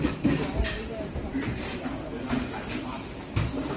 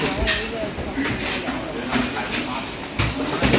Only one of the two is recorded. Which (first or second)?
second